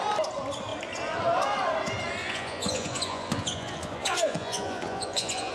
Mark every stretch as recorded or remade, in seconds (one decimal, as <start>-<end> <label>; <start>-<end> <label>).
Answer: 0.0-2.2 recorded; 2.2-5.5 remade

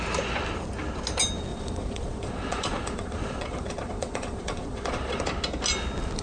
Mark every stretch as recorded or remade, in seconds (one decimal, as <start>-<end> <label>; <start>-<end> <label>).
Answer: 0.0-1.5 recorded; 1.5-5.2 remade; 5.2-6.2 recorded

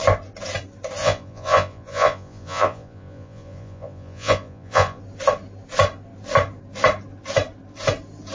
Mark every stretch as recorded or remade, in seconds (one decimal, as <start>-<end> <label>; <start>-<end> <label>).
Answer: 0.0-1.0 recorded; 1.0-5.0 remade; 5.0-8.3 recorded

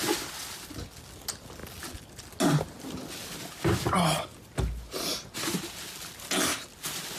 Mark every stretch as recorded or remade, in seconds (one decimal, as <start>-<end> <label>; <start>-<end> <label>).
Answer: 0.0-7.2 recorded

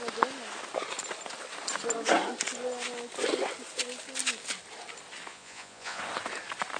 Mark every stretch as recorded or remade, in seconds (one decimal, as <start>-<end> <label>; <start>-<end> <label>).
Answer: 0.0-5.3 recorded; 5.3-6.0 remade; 6.0-6.8 recorded